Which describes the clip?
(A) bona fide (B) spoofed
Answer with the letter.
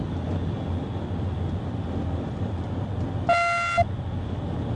A